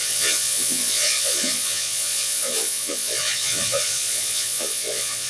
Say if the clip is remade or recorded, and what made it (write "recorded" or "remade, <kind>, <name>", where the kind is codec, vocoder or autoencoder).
remade, vocoder, Vocos